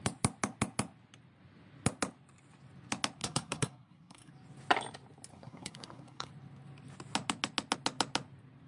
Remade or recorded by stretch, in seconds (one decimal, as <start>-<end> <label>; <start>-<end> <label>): 0.0-3.2 recorded; 3.2-4.3 remade; 4.3-5.3 recorded; 5.3-6.3 remade; 6.3-8.7 recorded